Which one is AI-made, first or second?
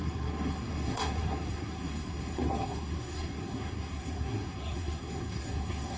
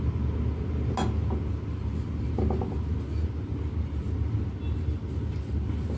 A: first